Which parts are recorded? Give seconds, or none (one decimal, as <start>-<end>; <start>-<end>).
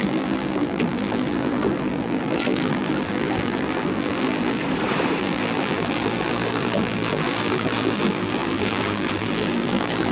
4.6-5.2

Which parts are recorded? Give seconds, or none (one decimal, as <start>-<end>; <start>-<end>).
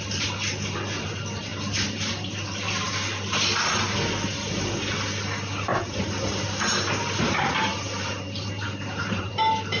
0.0-5.7; 9.3-9.8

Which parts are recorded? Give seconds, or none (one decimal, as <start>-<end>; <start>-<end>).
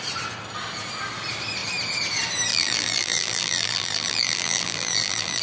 0.0-2.5